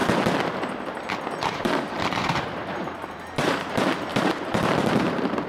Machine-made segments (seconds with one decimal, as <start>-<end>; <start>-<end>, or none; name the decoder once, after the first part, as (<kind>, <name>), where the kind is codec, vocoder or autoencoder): 1.4-5.5 (vocoder, BigVGAN v2)